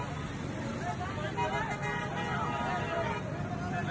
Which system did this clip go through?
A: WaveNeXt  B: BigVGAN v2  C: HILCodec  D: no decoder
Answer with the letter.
D